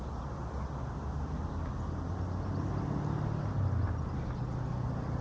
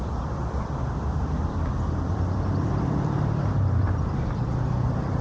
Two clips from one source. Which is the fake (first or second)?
second